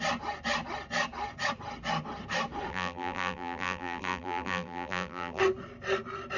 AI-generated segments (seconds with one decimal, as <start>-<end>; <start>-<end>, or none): 2.7-5.4